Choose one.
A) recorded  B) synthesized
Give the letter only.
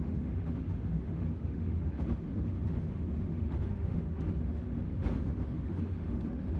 B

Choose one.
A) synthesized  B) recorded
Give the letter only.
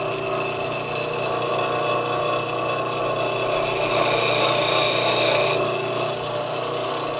B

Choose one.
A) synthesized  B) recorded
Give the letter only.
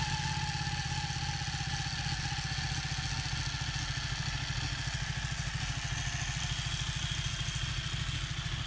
B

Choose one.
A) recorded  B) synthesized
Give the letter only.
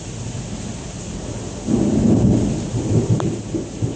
A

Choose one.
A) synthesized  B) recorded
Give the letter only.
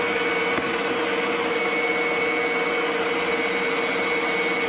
B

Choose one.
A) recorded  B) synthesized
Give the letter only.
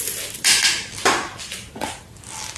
A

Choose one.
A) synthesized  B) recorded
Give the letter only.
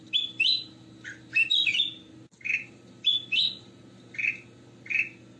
B